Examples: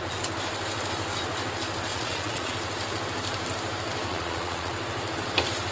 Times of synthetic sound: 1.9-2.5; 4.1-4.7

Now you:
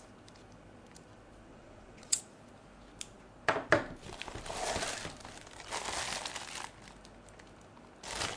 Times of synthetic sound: 1.5-2.2

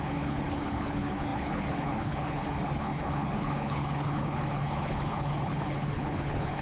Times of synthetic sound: 0.0-6.6